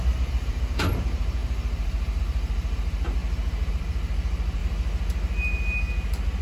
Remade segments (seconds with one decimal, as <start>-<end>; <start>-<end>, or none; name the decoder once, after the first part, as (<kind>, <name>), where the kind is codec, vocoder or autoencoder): 0.0-3.2 (vocoder, BigVGAN v2); 3.7-4.6